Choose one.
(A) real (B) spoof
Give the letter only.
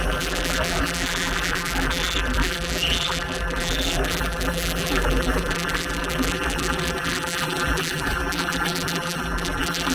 B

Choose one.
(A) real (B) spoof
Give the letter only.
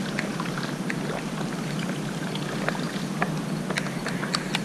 A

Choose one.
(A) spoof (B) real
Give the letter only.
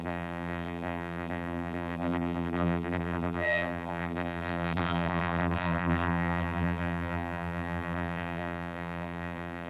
A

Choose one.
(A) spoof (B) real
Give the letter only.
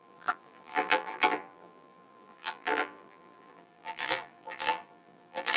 A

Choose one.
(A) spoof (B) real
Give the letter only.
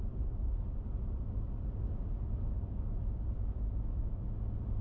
A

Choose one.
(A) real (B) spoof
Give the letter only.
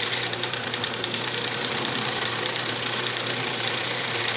B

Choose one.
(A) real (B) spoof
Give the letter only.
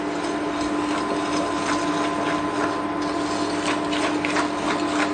A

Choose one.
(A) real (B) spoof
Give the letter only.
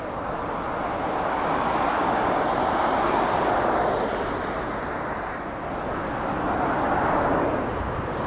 A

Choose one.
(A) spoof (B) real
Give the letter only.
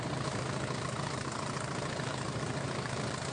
A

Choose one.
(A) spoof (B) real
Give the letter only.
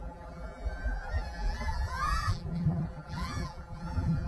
A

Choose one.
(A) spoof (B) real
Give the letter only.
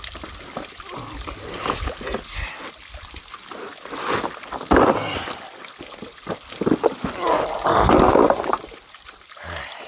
B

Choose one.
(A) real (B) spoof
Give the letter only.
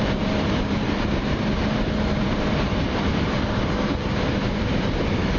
B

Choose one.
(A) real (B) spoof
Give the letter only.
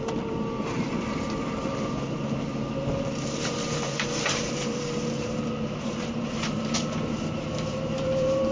B